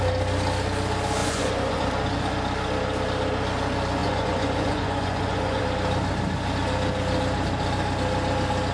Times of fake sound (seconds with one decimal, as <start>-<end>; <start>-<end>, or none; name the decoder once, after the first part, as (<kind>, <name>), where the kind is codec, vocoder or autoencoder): 1.2-1.8 (vocoder, Vocos); 4.0-5.6